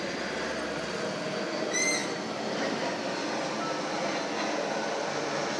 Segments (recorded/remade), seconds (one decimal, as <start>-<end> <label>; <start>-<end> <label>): 0.0-5.6 recorded